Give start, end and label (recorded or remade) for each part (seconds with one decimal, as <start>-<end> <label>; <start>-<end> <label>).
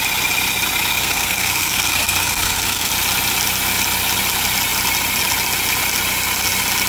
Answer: 0.0-0.9 recorded; 0.9-2.9 remade; 2.9-6.9 recorded